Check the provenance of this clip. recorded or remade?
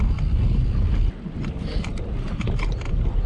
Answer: recorded